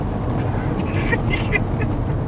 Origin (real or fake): real